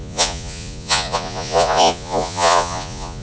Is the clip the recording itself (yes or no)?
no